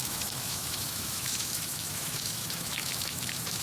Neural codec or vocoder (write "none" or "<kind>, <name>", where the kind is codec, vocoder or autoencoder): autoencoder, DAC-VAE